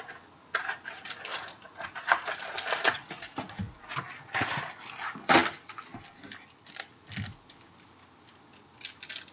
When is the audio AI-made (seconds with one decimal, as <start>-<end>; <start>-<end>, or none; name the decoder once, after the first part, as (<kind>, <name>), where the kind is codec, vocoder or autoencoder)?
1.3-2.4 (vocoder, Vocos); 3.0-3.8